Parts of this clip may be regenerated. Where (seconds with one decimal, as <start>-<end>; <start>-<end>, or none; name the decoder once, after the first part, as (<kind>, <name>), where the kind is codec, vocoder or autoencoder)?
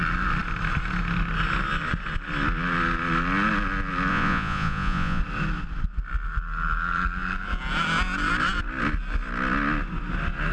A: 4.1-5.2 (vocoder, Vocos)